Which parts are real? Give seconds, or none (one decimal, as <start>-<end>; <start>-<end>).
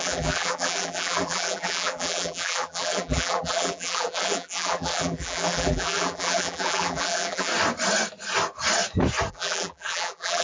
7.5-9.3